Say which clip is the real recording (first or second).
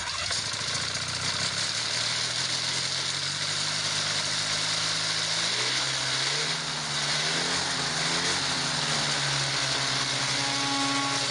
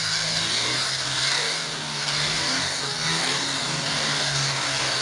first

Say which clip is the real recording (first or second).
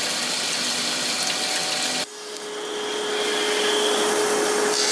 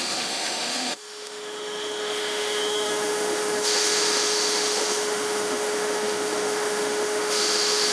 first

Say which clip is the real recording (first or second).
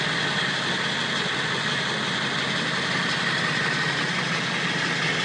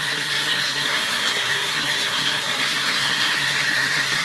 first